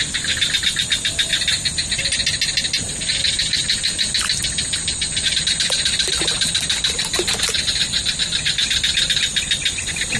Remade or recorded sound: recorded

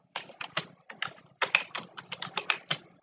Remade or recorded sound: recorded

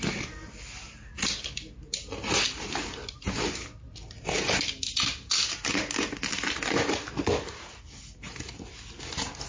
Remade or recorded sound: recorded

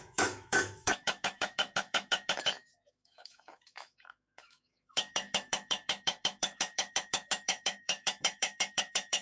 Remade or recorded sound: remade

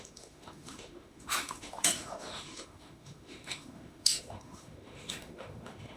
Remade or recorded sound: remade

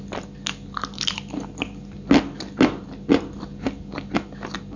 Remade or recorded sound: recorded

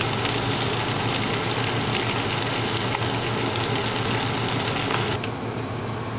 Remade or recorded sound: recorded